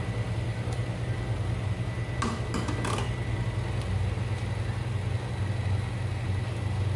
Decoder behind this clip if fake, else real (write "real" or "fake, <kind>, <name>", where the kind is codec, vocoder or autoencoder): real